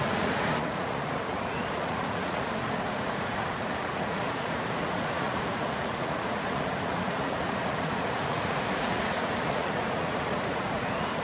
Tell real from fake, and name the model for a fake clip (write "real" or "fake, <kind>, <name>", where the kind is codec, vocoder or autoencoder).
fake, vocoder, Vocos